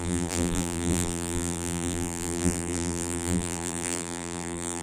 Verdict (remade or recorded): remade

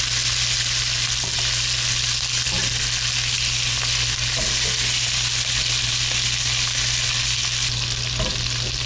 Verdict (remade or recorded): recorded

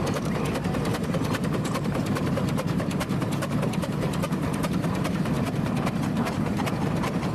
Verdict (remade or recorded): remade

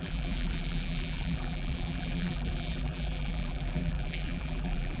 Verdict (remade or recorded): remade